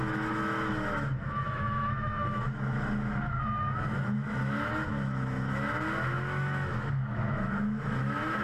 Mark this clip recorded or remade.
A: remade